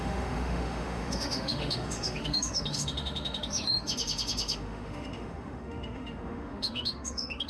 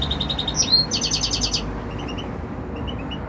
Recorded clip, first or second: second